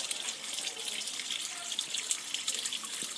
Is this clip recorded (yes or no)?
yes